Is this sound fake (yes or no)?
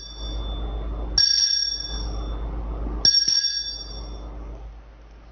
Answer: no